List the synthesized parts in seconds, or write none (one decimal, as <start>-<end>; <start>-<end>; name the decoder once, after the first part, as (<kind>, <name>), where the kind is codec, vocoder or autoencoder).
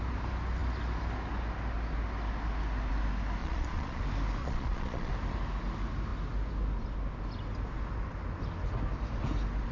3.4-4.0 (vocoder, Vocos); 4.4-5.1